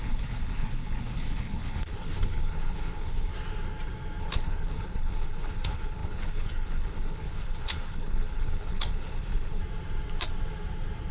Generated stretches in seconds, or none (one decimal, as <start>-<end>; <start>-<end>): 0.0-3.3; 4.2-9.6